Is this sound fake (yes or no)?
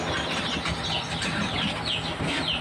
no